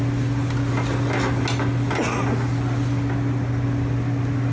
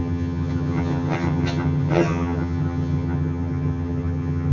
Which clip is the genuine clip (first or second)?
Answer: first